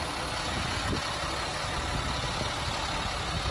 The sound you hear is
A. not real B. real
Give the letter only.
B